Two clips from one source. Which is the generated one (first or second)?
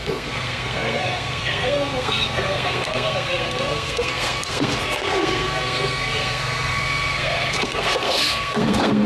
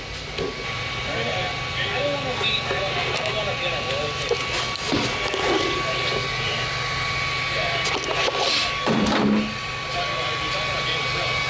first